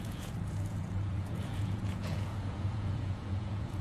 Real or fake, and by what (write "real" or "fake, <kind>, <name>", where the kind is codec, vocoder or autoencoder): fake, vocoder, Vocos